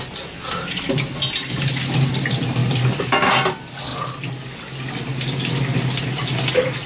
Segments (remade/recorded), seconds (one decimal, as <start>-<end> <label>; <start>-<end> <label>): 0.0-6.9 recorded